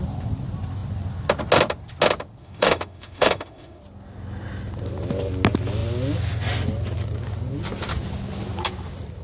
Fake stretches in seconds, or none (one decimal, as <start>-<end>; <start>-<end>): 2.4-3.8